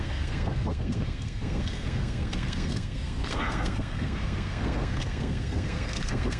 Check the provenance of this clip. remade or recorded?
remade